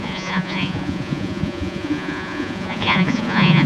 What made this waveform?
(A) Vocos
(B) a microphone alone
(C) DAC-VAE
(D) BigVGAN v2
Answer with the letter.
A